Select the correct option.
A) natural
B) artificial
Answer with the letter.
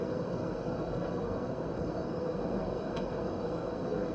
B